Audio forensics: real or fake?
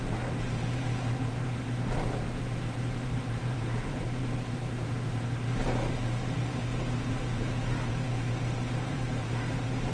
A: fake